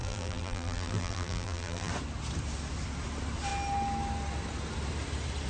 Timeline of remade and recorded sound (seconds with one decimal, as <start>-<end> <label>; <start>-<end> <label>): 0.0-1.9 remade; 1.9-5.5 recorded